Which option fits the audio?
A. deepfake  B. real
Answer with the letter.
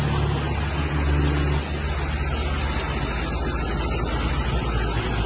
B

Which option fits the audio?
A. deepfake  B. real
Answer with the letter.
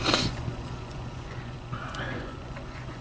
A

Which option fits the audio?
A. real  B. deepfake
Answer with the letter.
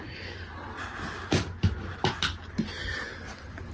A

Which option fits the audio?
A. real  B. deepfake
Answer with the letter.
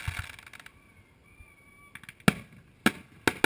A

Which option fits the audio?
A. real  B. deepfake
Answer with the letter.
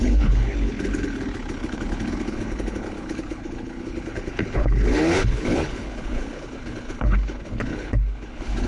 B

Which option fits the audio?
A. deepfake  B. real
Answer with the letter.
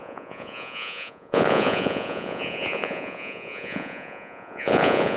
A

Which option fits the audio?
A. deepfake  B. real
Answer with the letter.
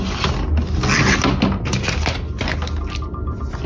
B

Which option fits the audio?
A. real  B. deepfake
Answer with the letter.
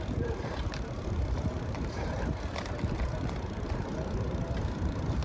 B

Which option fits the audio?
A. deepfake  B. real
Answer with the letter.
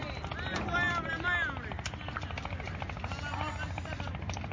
B